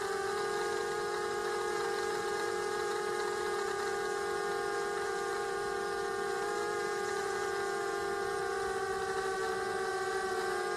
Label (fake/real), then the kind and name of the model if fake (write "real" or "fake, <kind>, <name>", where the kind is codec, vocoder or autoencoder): real